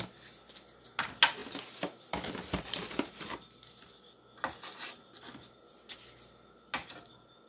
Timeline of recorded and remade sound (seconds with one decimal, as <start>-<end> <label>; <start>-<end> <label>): 0.0-7.5 recorded